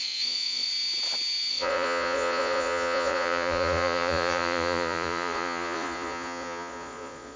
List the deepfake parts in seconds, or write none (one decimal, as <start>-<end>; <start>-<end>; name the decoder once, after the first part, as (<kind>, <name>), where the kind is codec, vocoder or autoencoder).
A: 0.0-0.7 (vocoder, Vocos); 1.5-7.4